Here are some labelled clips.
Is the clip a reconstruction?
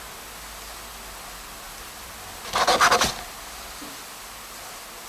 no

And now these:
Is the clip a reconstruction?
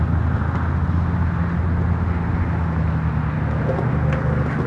no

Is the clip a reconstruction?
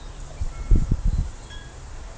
yes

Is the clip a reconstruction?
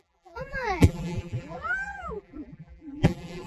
yes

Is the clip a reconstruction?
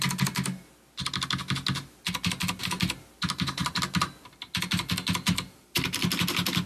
no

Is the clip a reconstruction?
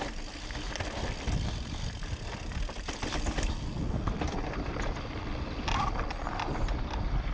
yes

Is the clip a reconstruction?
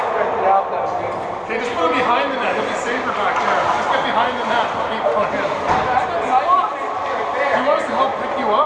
no